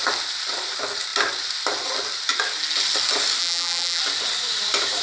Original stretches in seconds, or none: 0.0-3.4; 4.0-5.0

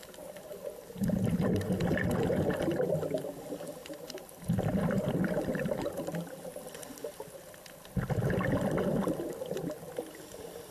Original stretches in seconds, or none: 0.0-10.7

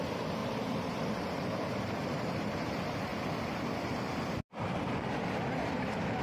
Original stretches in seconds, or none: 3.1-5.5

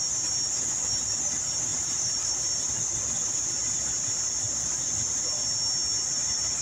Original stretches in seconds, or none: 0.0-1.7; 2.3-6.6

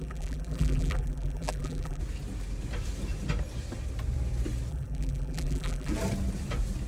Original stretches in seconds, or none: 2.0-4.7; 5.9-6.9

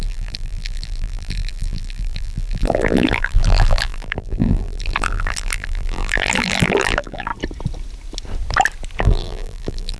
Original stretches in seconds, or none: 7.3-9.0

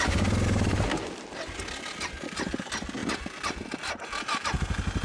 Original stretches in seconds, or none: 0.0-5.0

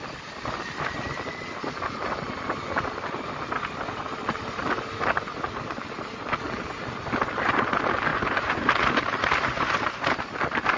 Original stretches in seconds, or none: 0.0-8.1; 10.4-10.8